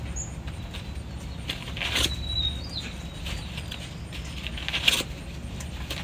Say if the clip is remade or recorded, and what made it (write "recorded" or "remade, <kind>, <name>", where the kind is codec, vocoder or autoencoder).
recorded